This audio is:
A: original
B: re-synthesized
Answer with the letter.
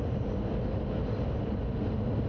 A